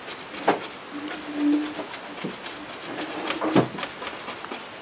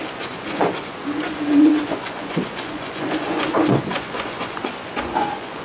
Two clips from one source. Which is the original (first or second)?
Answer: first